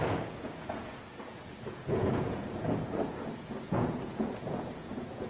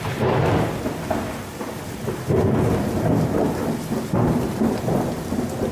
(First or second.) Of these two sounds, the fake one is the first